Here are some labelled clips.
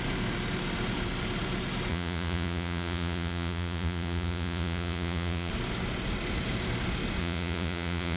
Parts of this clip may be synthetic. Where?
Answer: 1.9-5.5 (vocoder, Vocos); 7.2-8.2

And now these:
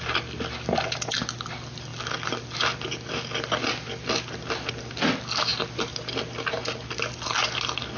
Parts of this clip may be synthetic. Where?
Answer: none

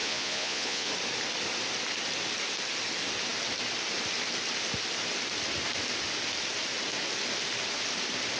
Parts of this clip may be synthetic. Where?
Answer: 0.0-0.9 (vocoder, Vocos)

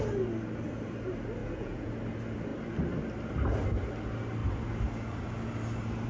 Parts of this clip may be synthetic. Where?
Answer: 1.4-1.9 (vocoder, Vocos)